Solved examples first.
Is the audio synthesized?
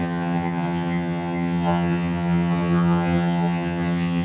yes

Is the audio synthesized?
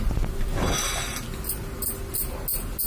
no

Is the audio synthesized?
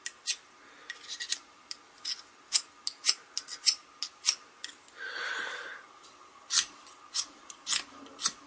no